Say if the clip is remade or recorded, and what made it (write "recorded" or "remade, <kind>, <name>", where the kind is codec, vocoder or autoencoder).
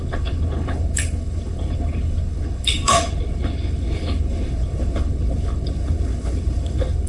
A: remade, codec, HILCodec